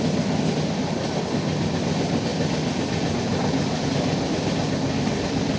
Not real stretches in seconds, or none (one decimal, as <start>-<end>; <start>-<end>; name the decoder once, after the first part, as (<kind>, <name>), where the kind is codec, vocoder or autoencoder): none